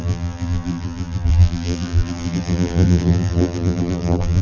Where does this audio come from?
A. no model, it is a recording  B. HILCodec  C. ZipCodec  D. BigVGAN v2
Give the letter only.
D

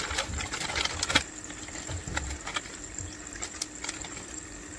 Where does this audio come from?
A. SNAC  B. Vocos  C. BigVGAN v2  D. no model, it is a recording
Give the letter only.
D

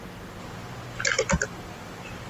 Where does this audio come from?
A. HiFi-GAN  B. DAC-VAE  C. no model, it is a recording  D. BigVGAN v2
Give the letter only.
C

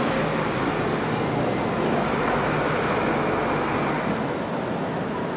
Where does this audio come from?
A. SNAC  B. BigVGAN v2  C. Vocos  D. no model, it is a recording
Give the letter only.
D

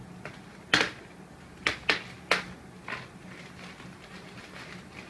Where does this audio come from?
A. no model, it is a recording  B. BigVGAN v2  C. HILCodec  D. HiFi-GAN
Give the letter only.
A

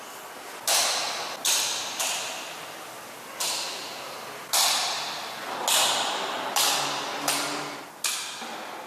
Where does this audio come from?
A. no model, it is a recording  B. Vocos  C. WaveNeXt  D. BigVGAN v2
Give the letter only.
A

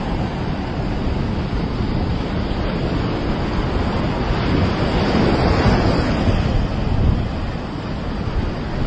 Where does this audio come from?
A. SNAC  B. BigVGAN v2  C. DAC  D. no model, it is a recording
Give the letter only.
D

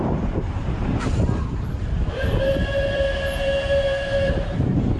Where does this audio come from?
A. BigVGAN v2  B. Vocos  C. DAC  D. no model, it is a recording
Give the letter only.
A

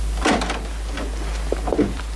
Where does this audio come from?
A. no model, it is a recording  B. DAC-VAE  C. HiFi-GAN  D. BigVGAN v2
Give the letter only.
D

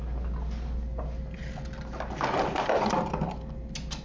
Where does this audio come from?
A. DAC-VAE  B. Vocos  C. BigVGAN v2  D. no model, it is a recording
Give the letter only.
D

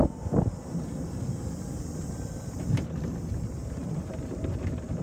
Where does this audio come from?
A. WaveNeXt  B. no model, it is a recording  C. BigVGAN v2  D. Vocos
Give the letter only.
B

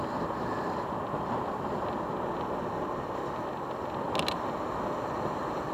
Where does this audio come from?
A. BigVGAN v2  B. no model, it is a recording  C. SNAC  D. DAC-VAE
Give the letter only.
B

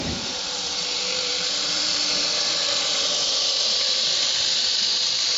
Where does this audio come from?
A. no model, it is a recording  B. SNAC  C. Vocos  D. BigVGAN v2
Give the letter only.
D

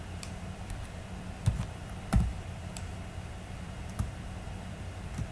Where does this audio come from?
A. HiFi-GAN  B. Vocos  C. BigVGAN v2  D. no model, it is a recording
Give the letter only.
C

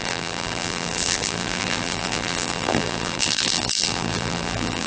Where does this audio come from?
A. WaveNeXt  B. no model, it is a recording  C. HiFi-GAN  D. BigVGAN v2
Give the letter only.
D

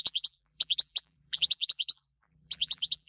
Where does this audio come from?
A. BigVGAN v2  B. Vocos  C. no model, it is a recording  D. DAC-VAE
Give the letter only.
A